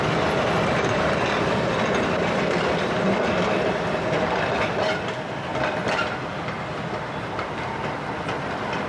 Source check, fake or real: real